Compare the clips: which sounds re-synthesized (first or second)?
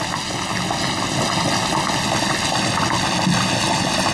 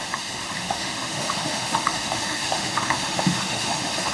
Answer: second